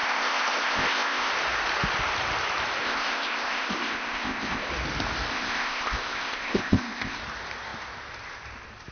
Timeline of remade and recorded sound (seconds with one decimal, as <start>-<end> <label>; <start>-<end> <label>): 0.0-1.3 remade; 1.3-2.8 recorded; 2.8-4.7 remade; 4.7-5.3 recorded; 5.3-7.2 remade; 7.2-8.9 recorded